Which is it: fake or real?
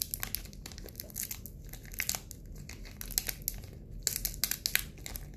real